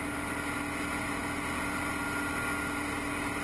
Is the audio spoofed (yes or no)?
no